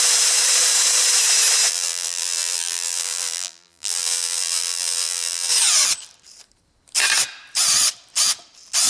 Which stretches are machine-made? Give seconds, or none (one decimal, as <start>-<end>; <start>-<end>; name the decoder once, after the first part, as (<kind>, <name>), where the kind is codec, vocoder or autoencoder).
1.7-5.5 (vocoder, BigVGAN v2)